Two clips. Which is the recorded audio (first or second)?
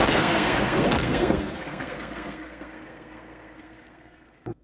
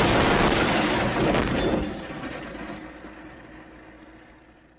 second